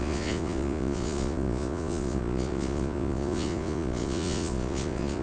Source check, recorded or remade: remade